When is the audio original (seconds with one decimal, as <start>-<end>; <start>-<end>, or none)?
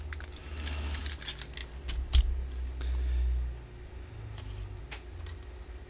0.0-0.4; 1.0-5.9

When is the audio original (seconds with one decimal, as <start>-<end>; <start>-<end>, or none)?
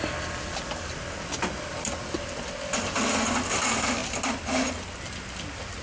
0.0-5.8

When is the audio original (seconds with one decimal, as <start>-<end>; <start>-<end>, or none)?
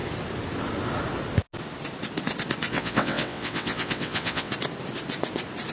0.0-2.7; 4.5-5.7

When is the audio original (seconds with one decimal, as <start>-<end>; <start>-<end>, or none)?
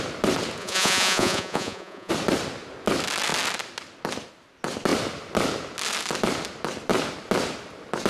0.0-0.6; 2.1-8.1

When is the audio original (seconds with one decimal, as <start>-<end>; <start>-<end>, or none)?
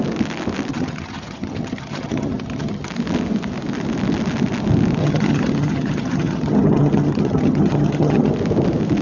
0.0-0.7; 2.9-5.0; 8.3-9.0